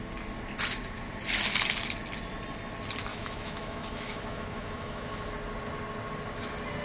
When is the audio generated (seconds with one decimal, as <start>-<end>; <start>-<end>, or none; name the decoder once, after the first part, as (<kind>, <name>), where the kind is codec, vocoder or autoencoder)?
3.1-5.3 (autoencoder, DAC-VAE)